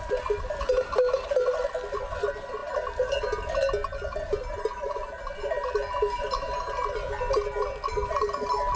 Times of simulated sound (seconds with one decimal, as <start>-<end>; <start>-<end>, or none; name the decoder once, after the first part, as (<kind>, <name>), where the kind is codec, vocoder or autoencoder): none

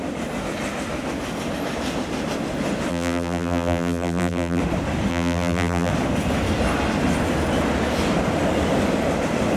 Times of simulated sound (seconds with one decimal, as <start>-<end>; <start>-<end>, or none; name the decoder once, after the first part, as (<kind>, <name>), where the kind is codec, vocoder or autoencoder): 2.9-4.6 (vocoder, BigVGAN v2); 5.1-5.9

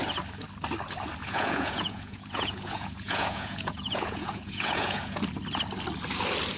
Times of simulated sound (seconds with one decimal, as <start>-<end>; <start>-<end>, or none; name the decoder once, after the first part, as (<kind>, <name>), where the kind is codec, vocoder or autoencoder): 1.2-5.2 (vocoder, Vocos)

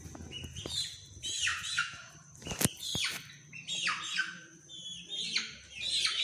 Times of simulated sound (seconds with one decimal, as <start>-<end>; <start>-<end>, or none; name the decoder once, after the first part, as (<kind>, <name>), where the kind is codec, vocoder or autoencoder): 1.5-2.1 (vocoder, Vocos)

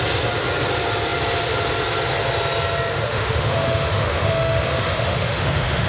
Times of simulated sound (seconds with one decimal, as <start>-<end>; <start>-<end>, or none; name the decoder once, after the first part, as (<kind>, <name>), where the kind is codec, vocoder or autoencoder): 2.9-5.9 (autoencoder, DAC-VAE)

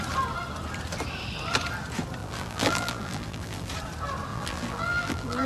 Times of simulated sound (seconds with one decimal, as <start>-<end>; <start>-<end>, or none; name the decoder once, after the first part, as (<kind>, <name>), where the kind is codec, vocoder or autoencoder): 2.2-3.7 (vocoder, BigVGAN v2); 4.3-5.5